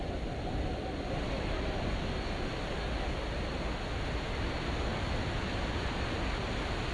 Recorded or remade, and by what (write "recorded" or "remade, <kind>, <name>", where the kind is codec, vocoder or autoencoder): recorded